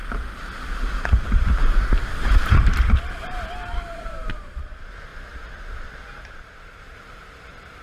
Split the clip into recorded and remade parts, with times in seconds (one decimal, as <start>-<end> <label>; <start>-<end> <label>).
0.0-1.0 recorded; 1.0-7.8 remade